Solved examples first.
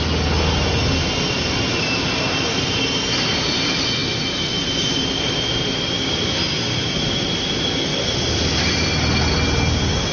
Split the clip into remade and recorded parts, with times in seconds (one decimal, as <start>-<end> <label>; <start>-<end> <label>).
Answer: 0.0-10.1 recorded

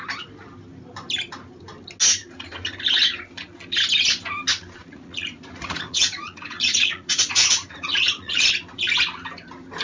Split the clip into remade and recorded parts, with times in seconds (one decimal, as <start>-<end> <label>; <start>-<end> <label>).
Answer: 0.0-4.9 recorded; 4.9-8.5 remade; 8.5-9.8 recorded

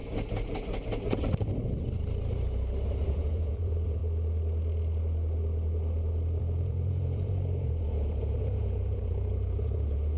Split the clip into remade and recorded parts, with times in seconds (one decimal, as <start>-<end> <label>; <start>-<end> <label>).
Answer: 0.0-3.1 recorded; 3.1-4.0 remade; 4.0-6.4 recorded; 6.4-10.2 remade

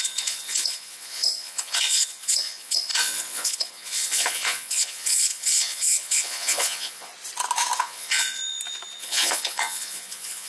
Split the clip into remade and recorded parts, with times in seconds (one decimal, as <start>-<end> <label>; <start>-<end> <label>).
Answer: 0.0-7.1 remade; 7.1-7.8 recorded; 7.8-8.4 remade; 8.4-9.0 recorded; 9.0-10.5 remade